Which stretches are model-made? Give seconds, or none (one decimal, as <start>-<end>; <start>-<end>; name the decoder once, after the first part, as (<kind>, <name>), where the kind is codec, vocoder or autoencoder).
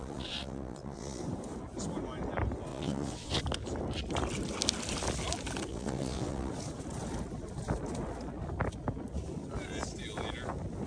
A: 0.0-1.2 (vocoder, WaveNeXt); 2.7-3.4; 5.7-6.5